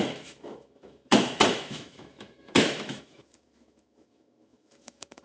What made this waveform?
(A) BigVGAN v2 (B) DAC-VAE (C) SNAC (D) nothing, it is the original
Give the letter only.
B